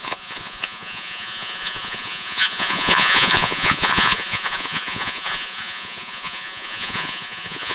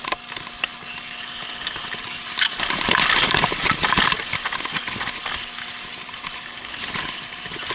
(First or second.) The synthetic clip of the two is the first